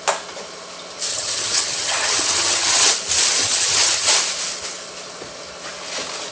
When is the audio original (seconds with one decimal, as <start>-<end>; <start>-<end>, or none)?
0.0-1.1; 2.9-3.4; 4.1-6.3